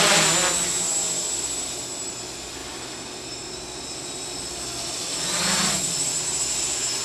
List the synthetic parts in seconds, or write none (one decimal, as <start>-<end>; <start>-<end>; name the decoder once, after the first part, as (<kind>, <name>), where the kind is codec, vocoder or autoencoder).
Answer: none